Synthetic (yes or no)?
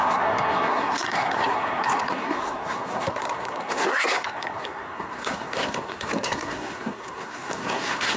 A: yes